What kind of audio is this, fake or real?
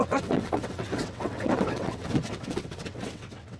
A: fake